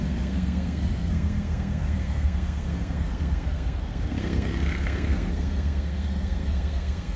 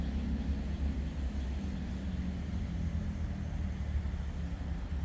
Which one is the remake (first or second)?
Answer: first